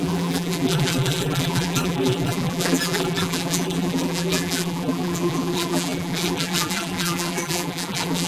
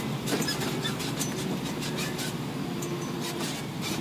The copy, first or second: first